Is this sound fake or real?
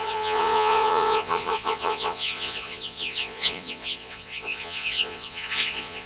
fake